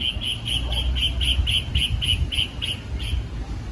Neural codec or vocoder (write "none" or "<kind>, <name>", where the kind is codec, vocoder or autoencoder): none